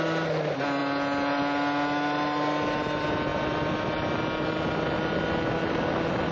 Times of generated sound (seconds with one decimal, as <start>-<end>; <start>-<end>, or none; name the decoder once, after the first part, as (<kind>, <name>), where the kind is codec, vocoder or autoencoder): none